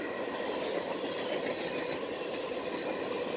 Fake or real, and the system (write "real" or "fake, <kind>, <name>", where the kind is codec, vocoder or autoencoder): real